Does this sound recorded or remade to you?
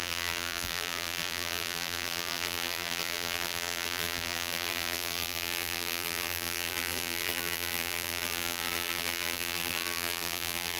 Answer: remade